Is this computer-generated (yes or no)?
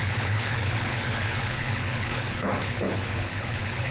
yes